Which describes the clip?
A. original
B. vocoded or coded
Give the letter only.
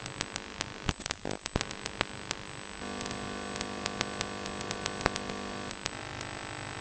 A